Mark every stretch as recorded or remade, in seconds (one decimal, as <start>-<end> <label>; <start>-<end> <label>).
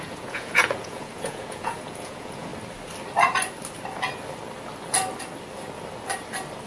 0.0-2.5 remade; 2.5-6.7 recorded